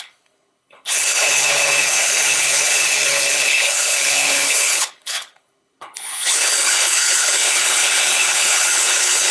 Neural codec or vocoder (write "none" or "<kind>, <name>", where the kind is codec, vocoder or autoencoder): codec, HILCodec